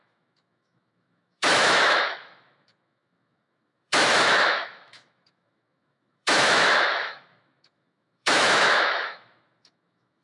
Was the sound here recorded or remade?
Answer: remade